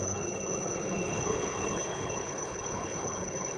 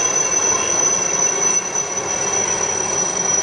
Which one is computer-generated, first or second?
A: first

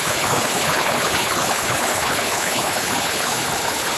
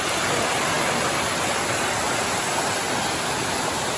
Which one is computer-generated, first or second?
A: first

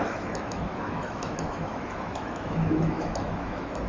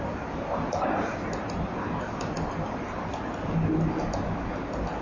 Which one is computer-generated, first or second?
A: first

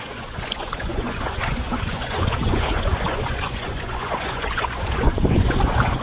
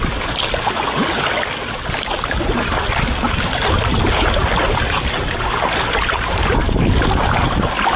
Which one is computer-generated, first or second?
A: first